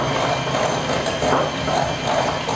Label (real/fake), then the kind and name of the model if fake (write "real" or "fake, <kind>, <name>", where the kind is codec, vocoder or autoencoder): real